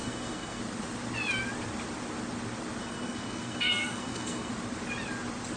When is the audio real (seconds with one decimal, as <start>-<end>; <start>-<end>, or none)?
0.6-2.8; 4.5-5.6